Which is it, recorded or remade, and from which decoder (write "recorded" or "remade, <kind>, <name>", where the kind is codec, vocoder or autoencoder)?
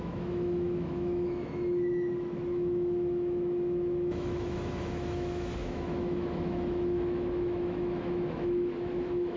remade, autoencoder, DAC-VAE